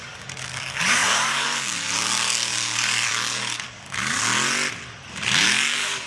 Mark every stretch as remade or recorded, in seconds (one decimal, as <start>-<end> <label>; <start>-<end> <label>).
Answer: 0.0-4.3 remade; 4.3-5.1 recorded; 5.1-6.1 remade